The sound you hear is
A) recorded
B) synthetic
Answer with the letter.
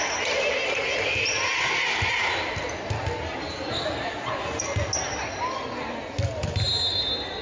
A